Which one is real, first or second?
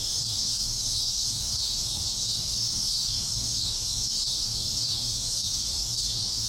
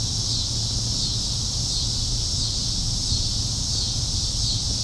second